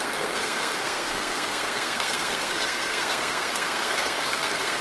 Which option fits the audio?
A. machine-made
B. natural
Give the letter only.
A